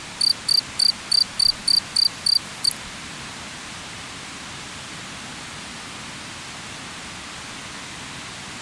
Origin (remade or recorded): recorded